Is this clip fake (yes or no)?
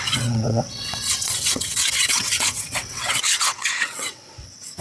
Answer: yes